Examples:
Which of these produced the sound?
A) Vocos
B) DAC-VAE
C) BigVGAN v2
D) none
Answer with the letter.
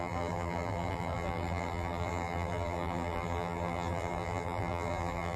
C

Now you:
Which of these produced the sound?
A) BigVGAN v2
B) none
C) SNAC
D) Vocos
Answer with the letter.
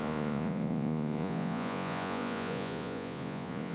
D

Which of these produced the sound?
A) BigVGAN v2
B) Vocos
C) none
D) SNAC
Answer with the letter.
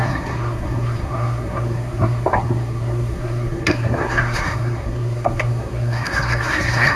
D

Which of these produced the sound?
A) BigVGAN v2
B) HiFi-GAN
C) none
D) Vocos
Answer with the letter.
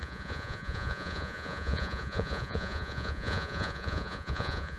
D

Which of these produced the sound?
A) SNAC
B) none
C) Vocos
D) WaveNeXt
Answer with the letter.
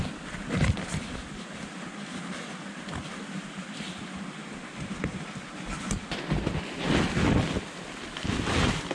B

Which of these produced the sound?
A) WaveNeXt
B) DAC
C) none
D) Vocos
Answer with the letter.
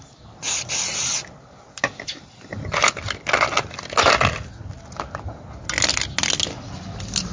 C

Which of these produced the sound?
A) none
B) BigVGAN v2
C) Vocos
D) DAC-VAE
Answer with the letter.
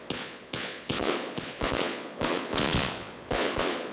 C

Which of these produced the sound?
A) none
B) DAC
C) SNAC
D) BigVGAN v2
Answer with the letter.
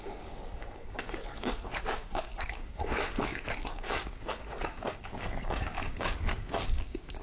B